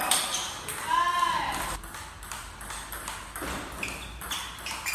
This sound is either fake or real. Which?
real